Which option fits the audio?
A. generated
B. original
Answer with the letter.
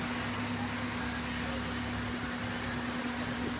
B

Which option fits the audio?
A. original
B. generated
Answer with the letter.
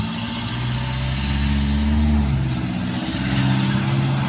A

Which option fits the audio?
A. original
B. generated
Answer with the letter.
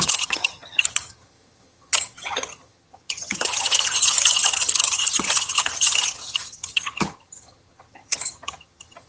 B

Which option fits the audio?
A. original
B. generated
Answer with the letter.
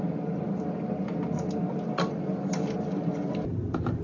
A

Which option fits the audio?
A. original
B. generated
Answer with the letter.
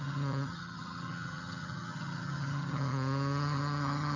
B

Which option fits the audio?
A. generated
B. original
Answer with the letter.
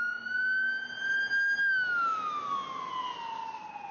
B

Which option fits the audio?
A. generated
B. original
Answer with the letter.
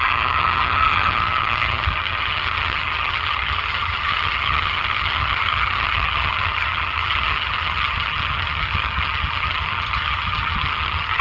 A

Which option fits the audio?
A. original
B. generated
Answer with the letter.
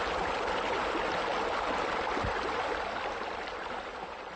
A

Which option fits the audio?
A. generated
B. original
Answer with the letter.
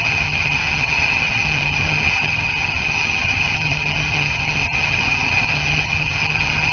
A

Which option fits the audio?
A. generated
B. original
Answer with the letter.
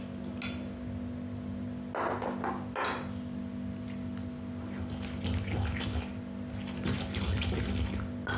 B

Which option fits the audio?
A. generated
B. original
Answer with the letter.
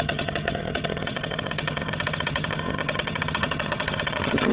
A